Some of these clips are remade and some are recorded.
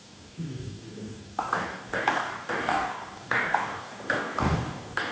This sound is remade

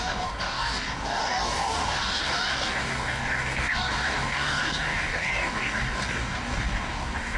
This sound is remade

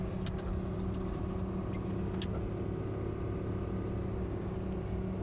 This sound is recorded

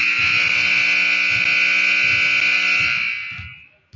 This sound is recorded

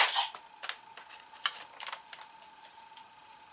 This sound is recorded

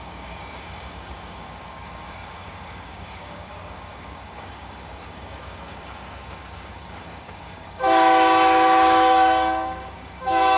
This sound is remade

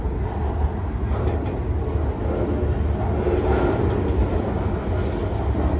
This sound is recorded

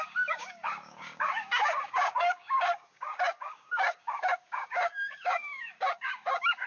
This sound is remade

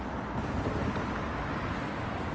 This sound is recorded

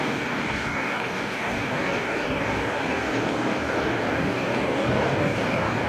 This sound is remade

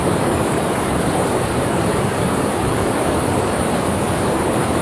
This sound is remade